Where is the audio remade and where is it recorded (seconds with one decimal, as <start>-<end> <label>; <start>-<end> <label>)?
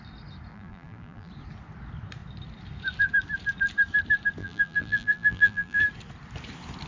0.0-0.5 recorded; 0.5-1.3 remade; 1.3-4.4 recorded; 4.4-5.8 remade; 5.8-6.9 recorded